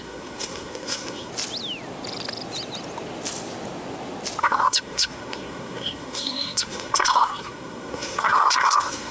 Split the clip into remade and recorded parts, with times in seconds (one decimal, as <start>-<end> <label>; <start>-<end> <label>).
0.0-1.3 remade; 1.3-4.4 recorded; 4.4-9.1 remade